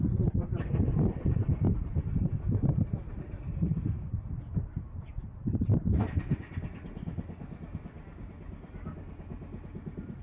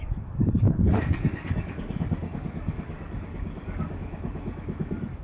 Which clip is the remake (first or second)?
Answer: second